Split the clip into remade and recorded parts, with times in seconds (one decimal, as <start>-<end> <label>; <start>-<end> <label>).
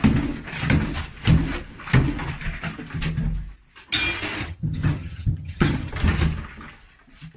0.0-4.4 recorded; 4.4-5.9 remade; 5.9-7.4 recorded